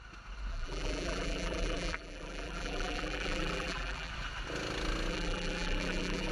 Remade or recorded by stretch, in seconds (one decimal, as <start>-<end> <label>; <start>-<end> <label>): 0.0-0.5 recorded; 0.5-4.1 remade; 4.1-5.1 recorded; 5.1-6.3 remade